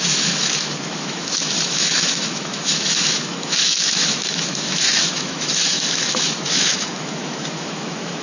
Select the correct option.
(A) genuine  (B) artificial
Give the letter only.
B